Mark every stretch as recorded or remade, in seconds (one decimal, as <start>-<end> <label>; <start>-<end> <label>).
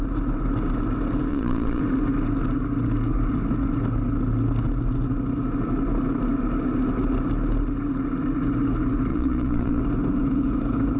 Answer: 0.0-1.3 recorded; 1.3-1.8 remade; 1.8-9.1 recorded; 9.1-9.8 remade; 9.8-11.0 recorded